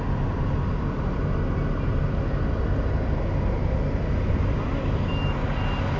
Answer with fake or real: real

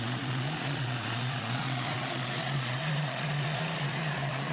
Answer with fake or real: fake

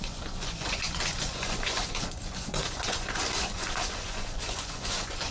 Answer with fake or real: fake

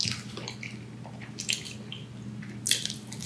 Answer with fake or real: real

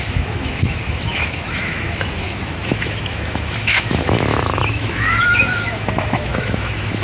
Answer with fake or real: fake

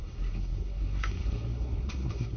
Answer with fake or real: fake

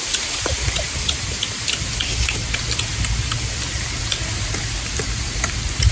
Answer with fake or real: real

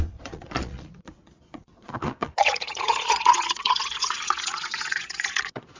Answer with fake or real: fake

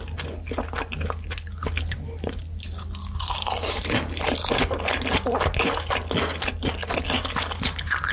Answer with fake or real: real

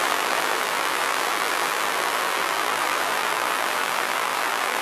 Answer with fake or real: fake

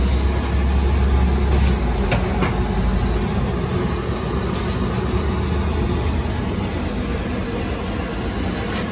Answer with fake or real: real